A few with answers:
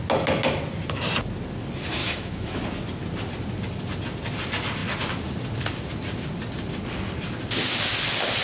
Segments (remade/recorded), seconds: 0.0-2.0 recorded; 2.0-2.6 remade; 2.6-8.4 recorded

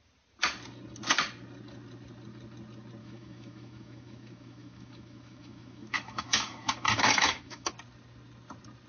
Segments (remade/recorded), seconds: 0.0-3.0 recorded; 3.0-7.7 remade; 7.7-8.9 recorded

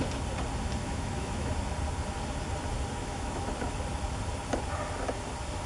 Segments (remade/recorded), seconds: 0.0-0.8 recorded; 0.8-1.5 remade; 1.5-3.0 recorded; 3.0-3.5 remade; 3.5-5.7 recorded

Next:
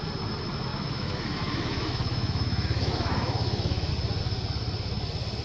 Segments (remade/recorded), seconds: 0.0-0.7 recorded; 0.7-3.9 remade; 3.9-5.4 recorded

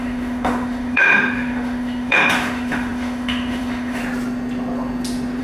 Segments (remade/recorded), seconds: 0.0-4.0 remade; 4.0-5.4 recorded

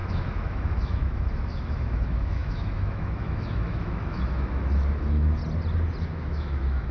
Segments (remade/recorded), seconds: 0.0-5.4 remade; 5.4-6.0 recorded; 6.0-6.9 remade

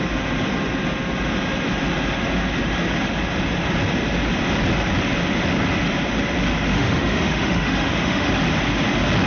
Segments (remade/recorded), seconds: 0.0-6.7 recorded; 6.7-8.3 remade; 8.3-9.3 recorded

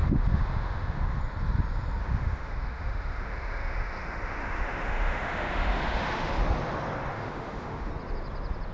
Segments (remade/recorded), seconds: 0.0-1.2 remade; 1.2-2.0 recorded; 2.0-6.4 remade; 6.4-7.1 recorded; 7.1-7.9 remade; 7.9-8.7 recorded